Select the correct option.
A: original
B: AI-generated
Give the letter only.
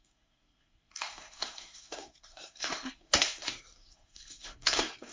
B